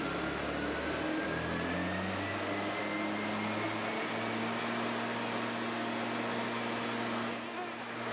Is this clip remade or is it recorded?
recorded